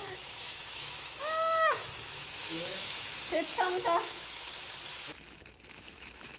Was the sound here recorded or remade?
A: remade